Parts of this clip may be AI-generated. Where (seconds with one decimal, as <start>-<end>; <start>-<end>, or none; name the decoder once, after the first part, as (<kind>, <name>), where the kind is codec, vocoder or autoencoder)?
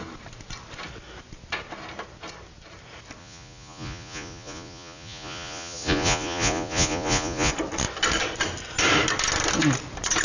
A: 3.2-7.5 (vocoder, Vocos)